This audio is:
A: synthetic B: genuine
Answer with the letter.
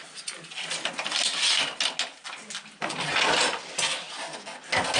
B